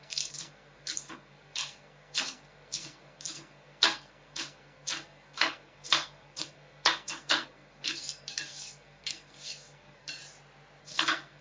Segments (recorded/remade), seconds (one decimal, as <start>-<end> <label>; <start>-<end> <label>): 0.0-10.2 remade; 10.2-10.8 recorded; 10.8-11.4 remade